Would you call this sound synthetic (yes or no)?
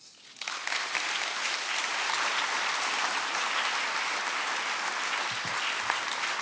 no